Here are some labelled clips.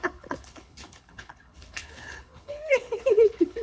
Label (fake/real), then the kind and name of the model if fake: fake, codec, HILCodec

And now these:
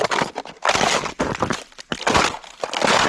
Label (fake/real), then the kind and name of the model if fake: real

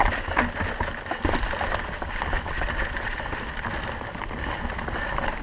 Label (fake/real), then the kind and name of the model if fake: real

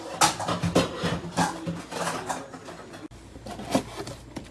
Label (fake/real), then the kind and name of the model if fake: real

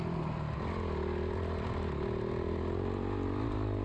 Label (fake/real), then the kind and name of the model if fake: real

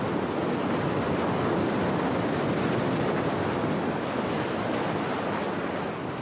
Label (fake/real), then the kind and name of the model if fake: real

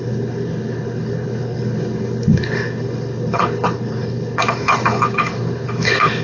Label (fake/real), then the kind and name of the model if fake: fake, codec, HILCodec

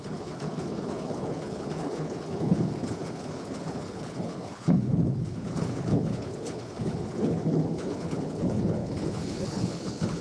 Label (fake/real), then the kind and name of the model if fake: fake, codec, HILCodec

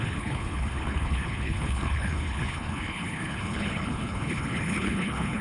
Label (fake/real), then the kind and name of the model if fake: fake, codec, HILCodec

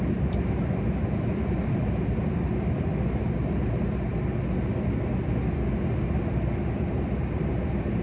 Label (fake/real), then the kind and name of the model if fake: real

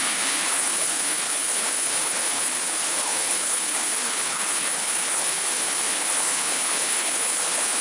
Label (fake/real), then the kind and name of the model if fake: fake, codec, HILCodec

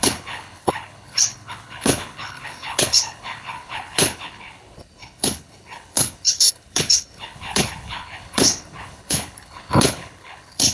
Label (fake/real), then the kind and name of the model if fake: fake, codec, HILCodec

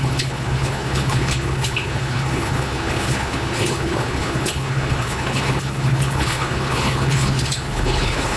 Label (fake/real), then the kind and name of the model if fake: fake, codec, HILCodec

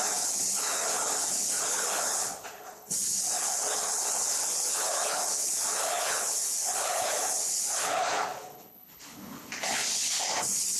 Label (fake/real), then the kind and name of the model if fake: fake, codec, HILCodec